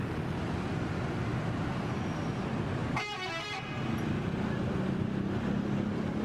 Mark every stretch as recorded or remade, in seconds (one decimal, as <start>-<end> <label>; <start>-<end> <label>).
0.0-2.8 recorded; 2.8-3.7 remade; 3.7-6.2 recorded